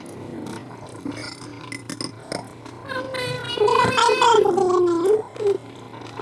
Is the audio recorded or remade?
recorded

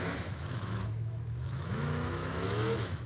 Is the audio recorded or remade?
remade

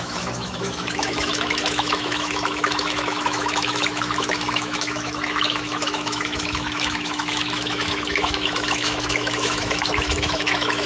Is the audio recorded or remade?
remade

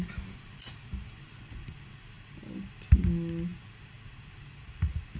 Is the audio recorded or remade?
recorded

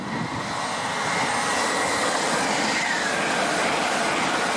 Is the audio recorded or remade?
recorded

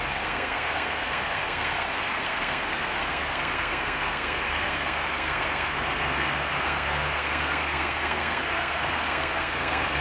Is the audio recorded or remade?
remade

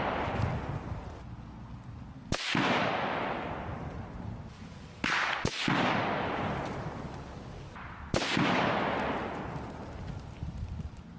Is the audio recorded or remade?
recorded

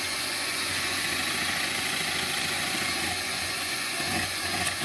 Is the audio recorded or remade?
remade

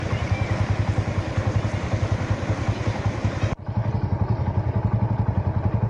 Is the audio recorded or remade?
recorded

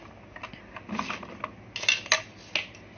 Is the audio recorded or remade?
recorded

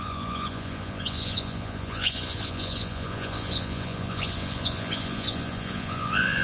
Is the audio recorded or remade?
remade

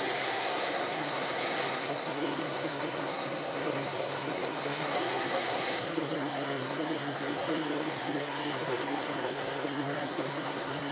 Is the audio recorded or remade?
remade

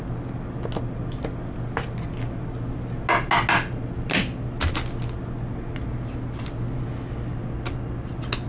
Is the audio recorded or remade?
recorded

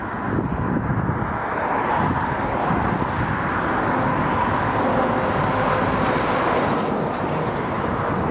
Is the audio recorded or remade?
recorded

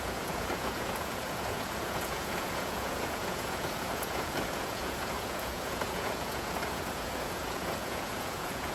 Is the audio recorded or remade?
remade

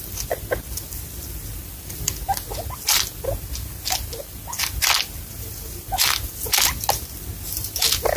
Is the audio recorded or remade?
recorded